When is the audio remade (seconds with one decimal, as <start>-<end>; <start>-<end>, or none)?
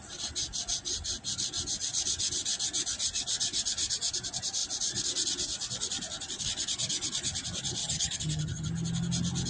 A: 7.8-8.7